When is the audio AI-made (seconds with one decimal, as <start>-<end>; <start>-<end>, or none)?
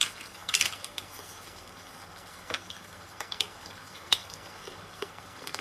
0.0-5.6